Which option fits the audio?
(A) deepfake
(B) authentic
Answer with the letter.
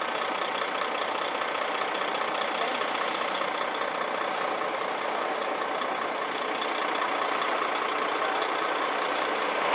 B